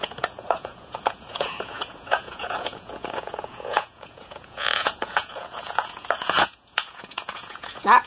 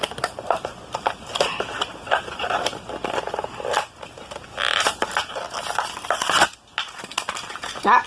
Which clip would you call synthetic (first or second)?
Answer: first